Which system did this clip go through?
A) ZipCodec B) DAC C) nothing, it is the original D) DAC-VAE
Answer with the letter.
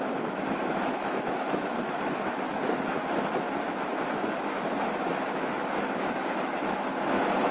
D